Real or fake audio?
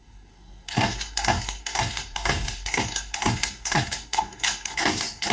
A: fake